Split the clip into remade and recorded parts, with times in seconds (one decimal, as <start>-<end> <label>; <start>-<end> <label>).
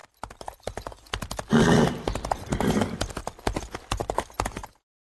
0.0-5.1 recorded